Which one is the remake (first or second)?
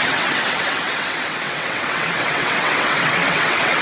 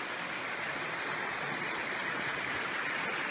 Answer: first